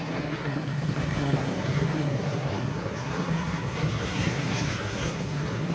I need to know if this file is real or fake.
fake